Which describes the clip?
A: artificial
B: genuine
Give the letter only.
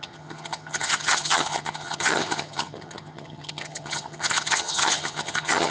A